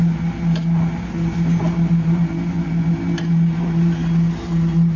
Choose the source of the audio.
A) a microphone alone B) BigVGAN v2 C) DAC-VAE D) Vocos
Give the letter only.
A